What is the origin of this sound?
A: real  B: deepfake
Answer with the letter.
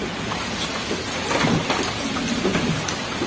A